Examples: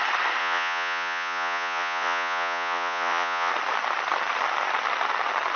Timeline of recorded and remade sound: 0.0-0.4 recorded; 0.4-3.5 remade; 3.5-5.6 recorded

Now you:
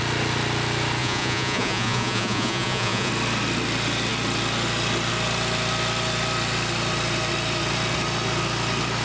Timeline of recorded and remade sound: 0.0-1.0 recorded; 1.0-3.1 remade; 3.1-9.0 recorded

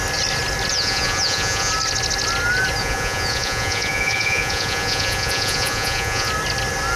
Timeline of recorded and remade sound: 0.0-0.7 recorded; 0.7-1.7 remade; 1.7-2.8 recorded; 2.8-6.3 remade; 6.3-7.0 recorded

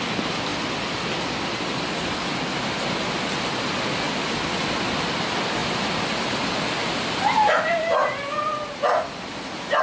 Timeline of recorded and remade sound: 0.0-9.8 recorded

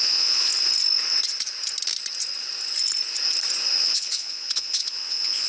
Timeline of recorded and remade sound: 0.0-0.5 remade; 0.5-3.8 recorded; 3.8-5.5 remade

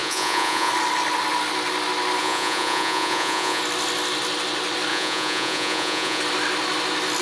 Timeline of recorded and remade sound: 0.0-0.7 remade; 0.7-2.2 recorded; 2.2-3.6 remade; 3.6-4.9 recorded; 4.9-6.2 remade; 6.2-7.2 recorded

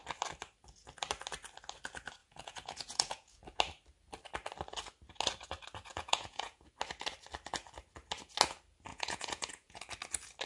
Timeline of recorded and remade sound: 0.0-2.2 recorded; 2.2-3.4 remade; 3.4-5.9 recorded; 5.9-6.7 remade; 6.7-8.9 recorded; 8.9-9.8 remade; 9.8-10.5 recorded